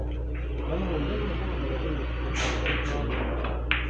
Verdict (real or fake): real